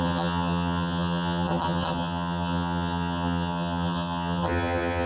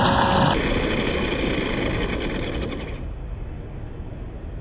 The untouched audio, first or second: second